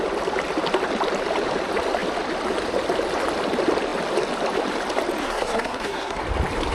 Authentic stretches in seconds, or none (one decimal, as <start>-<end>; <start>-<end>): 0.0-5.2; 6.2-6.7